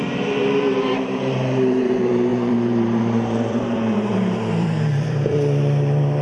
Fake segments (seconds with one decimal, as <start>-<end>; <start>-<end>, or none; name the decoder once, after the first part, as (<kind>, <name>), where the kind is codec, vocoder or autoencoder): 0.0-6.2 (vocoder, BigVGAN v2)